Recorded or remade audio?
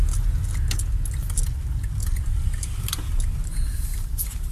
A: recorded